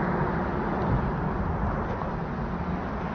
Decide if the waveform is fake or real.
real